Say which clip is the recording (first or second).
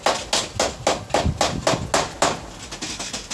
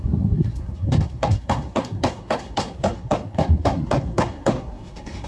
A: first